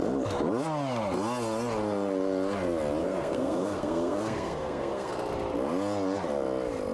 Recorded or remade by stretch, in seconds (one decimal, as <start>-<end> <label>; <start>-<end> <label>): 0.0-3.0 recorded; 3.0-5.1 remade; 5.1-6.9 recorded